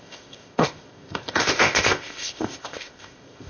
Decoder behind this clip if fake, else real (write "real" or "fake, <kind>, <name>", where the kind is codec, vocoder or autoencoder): fake, codec, ZipCodec